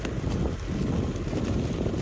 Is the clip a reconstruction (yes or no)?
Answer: no